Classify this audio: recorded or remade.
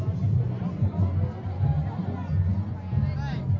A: recorded